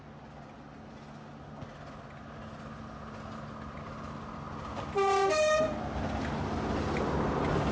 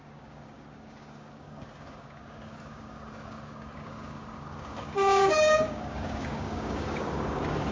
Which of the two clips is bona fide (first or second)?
first